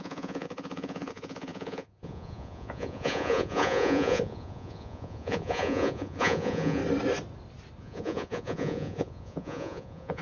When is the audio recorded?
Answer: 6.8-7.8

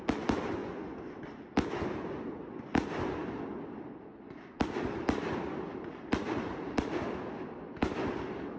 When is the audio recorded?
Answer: 0.0-0.6; 1.2-8.6

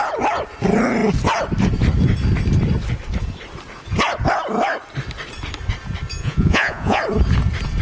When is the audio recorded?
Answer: 0.0-6.2; 7.0-7.8

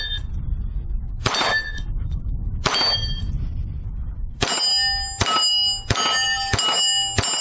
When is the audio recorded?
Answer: 0.0-7.4

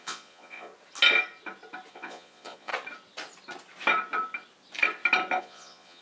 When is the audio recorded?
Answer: 0.7-1.9; 2.7-5.4

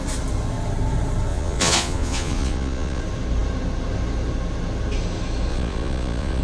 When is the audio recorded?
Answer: 0.0-1.3; 3.0-5.5